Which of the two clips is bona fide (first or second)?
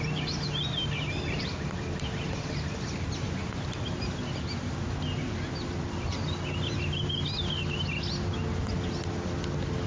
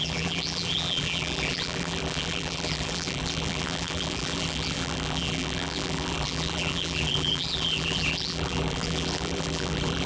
first